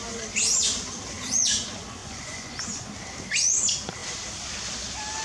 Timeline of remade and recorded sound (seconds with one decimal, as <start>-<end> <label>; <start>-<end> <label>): 0.0-2.0 recorded; 2.0-2.9 remade; 2.9-5.2 recorded